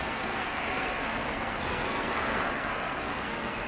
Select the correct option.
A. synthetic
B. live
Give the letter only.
A